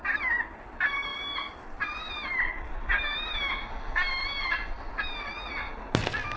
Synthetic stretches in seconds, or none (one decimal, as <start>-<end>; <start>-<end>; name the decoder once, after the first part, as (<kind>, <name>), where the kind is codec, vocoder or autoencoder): none